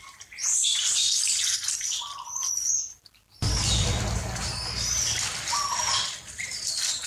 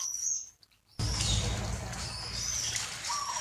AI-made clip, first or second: first